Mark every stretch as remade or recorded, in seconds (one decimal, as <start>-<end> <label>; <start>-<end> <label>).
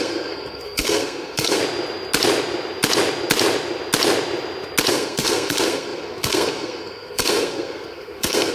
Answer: 0.0-1.6 remade; 1.6-4.9 recorded; 4.9-8.5 remade